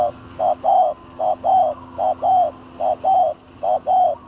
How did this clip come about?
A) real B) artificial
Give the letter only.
A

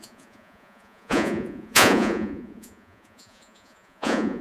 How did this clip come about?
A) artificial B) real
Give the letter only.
A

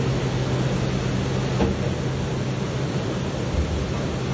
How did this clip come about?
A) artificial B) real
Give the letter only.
B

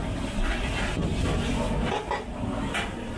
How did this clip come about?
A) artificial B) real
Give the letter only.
B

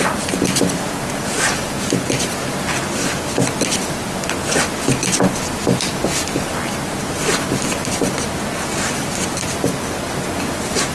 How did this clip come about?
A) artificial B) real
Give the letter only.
B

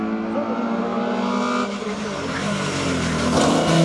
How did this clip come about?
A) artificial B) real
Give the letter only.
B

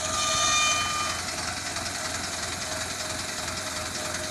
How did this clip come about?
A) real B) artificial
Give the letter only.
A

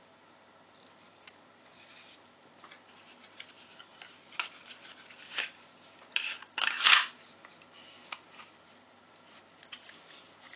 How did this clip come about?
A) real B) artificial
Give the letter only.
A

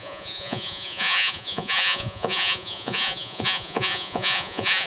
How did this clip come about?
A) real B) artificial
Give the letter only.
B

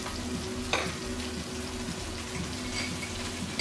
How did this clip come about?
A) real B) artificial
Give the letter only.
A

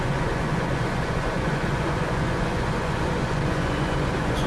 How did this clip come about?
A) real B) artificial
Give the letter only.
B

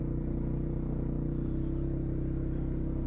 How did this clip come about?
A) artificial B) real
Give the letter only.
B